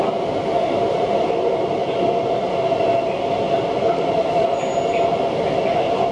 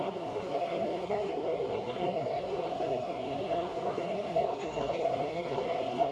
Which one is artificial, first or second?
second